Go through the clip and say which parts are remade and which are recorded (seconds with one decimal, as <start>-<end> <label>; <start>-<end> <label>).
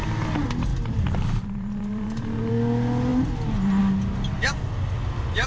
0.0-0.7 recorded; 0.7-2.5 remade; 2.5-5.5 recorded